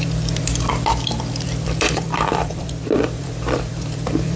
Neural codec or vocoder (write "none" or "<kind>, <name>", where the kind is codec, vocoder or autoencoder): vocoder, BigVGAN v2